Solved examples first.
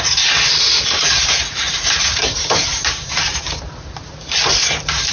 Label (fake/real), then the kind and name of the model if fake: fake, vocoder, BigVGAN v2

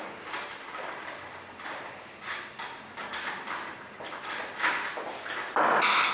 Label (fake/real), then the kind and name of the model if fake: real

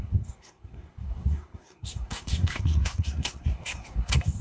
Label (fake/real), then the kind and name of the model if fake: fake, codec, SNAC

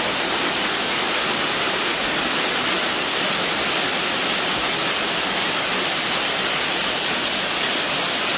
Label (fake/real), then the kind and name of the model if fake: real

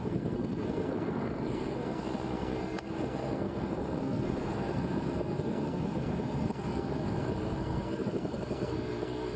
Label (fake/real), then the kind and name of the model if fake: fake, codec, SNAC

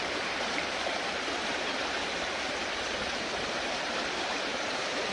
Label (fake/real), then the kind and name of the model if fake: fake, vocoder, BigVGAN v2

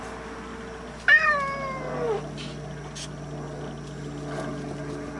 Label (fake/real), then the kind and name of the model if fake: real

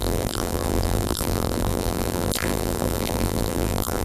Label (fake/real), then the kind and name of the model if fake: fake, vocoder, BigVGAN v2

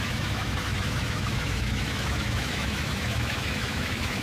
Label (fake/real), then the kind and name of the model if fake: fake, autoencoder, DAC-VAE